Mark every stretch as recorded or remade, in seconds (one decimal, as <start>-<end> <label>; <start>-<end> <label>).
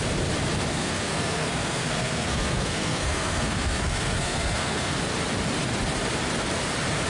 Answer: 0.0-0.7 recorded; 0.7-5.0 remade; 5.0-7.1 recorded